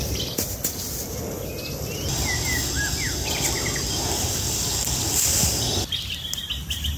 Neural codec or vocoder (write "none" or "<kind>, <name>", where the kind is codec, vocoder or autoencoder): none